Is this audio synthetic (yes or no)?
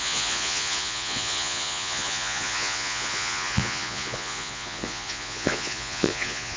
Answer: yes